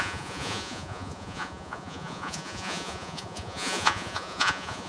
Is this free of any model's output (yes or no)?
no